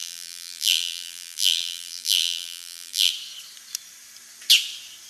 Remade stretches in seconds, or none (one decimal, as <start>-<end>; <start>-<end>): 0.0-3.1